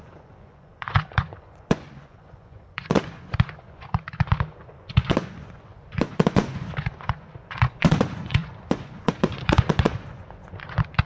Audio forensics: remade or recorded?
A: remade